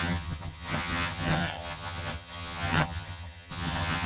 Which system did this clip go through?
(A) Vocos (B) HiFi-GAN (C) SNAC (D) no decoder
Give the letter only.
B